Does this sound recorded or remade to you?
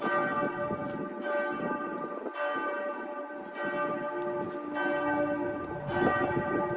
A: recorded